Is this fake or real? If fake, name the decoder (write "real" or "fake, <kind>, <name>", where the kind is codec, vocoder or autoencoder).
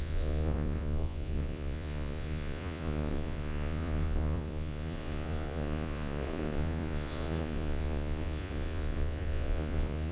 fake, vocoder, Vocos